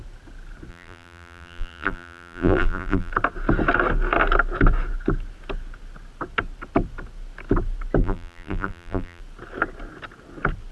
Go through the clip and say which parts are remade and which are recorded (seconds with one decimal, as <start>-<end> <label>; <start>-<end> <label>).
0.0-0.7 recorded; 0.7-3.1 remade; 3.1-8.0 recorded; 8.0-9.2 remade; 9.2-10.7 recorded